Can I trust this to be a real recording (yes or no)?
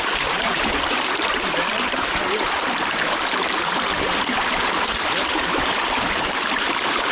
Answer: no